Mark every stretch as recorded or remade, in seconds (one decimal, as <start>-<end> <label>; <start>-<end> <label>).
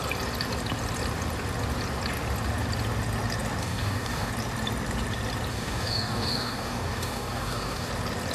0.0-3.6 recorded; 3.6-4.3 remade; 4.3-5.5 recorded; 5.5-7.9 remade; 7.9-8.3 recorded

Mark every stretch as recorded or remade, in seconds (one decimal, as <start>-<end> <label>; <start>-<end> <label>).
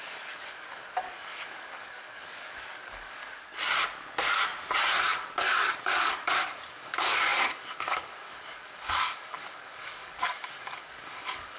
0.0-3.2 remade; 3.2-5.8 recorded; 5.8-11.6 remade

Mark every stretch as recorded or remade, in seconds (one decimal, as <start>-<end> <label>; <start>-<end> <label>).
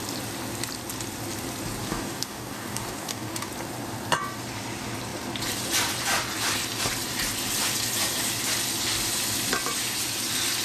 0.0-1.8 recorded; 1.8-3.5 remade; 3.5-10.6 recorded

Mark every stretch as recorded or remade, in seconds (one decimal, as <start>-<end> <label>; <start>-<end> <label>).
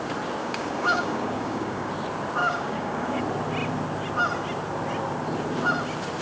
0.0-0.4 recorded; 0.4-1.9 remade; 1.9-2.4 recorded; 2.4-3.2 remade; 3.2-6.2 recorded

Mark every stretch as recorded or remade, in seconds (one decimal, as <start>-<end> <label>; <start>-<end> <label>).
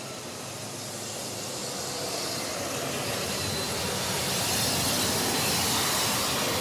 0.0-6.6 recorded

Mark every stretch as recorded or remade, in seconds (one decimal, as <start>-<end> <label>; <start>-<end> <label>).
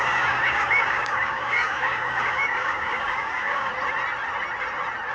0.0-3.7 remade; 3.7-5.1 recorded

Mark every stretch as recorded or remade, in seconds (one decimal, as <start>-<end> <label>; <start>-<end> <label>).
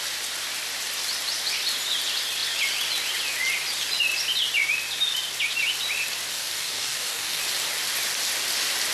0.0-6.3 recorded; 6.3-7.4 remade; 7.4-8.9 recorded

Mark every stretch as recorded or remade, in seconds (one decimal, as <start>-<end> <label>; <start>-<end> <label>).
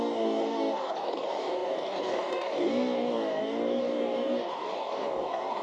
0.0-5.6 remade